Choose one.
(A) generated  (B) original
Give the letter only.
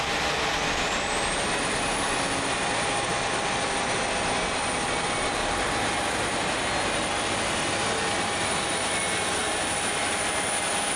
B